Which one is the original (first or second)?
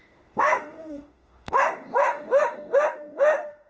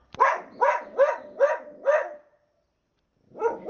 second